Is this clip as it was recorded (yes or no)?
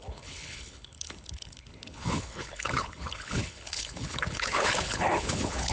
no